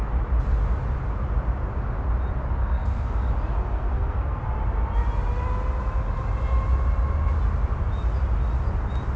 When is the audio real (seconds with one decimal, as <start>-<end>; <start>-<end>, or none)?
0.0-2.6; 3.3-3.7; 4.4-9.2